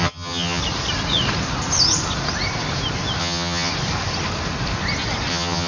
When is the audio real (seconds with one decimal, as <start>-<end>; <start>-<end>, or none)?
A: 0.6-3.2; 3.7-5.3